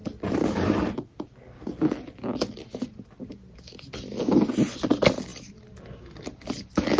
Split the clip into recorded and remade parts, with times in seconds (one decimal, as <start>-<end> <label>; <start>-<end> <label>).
0.0-7.0 recorded